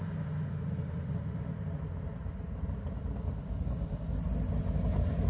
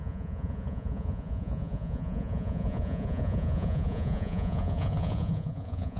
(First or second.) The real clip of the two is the first